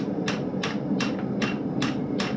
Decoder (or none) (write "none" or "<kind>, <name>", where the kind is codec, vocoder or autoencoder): vocoder, BigVGAN v2